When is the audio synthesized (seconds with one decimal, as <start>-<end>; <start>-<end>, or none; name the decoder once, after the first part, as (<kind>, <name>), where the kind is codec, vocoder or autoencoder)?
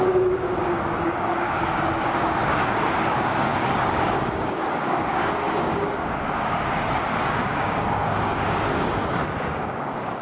0.0-10.2 (codec, DAC)